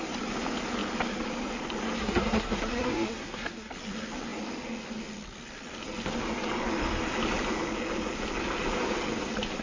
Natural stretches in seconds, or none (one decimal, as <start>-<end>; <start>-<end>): 0.0-2.0; 3.7-9.6